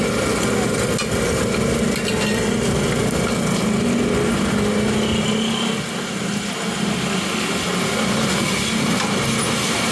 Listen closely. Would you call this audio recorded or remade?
recorded